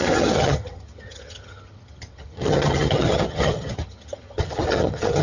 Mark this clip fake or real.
fake